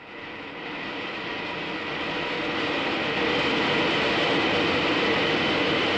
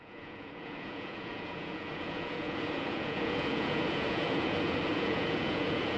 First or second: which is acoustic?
first